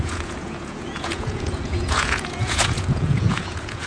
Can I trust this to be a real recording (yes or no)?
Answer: no